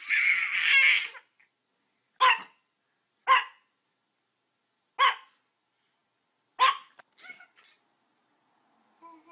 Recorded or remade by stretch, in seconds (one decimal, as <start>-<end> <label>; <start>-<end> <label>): 0.0-9.3 recorded